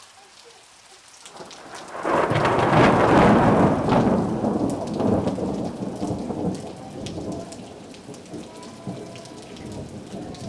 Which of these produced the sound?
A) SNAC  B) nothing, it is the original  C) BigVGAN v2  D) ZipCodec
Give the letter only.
B